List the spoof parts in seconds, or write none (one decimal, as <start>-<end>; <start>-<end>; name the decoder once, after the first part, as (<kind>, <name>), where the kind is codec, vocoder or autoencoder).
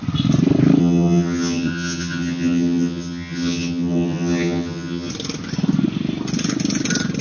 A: 0.8-5.1 (vocoder, HiFi-GAN)